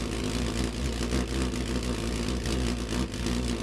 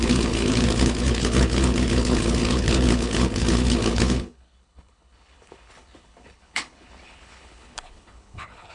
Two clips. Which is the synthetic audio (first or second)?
second